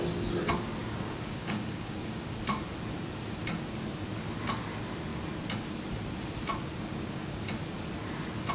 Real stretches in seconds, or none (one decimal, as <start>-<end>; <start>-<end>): 0.0-0.8; 2.4-6.7; 7.5-8.5